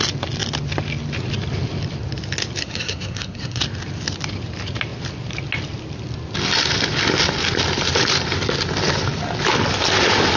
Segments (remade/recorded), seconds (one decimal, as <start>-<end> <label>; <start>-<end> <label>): 0.0-2.6 recorded; 2.6-3.6 remade; 3.6-10.4 recorded